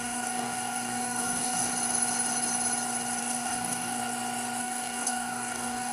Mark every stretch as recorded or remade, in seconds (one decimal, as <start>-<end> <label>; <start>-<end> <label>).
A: 0.0-1.7 remade; 1.7-3.2 recorded; 3.2-4.0 remade; 4.0-4.6 recorded; 4.6-5.9 remade

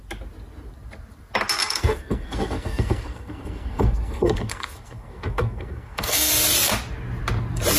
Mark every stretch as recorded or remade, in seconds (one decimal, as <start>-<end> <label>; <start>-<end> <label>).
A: 0.0-1.6 recorded; 1.6-6.3 remade; 6.3-7.8 recorded

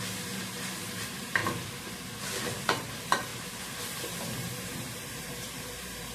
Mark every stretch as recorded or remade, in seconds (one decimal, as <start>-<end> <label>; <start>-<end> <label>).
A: 0.0-1.4 remade; 1.4-2.2 recorded; 2.2-6.1 remade

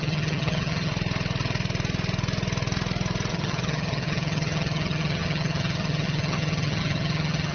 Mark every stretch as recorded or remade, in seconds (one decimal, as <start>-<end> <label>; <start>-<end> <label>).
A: 0.0-0.9 remade; 0.9-3.3 recorded; 3.3-7.5 remade

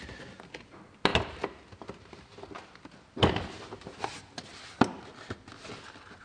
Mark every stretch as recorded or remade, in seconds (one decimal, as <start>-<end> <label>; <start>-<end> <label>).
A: 0.0-6.2 recorded

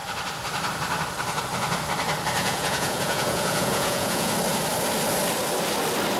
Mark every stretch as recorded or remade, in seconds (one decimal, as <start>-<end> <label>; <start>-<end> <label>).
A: 0.0-2.4 recorded; 2.4-4.3 remade; 4.3-6.2 recorded